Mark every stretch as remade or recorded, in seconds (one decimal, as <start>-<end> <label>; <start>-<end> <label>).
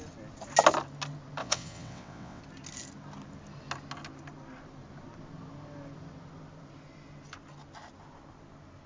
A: 0.0-1.4 recorded; 1.4-2.4 remade; 2.4-8.9 recorded